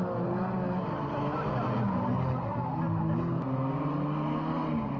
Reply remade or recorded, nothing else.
recorded